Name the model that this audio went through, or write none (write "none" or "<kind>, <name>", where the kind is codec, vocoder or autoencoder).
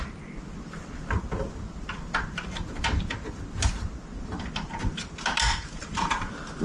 none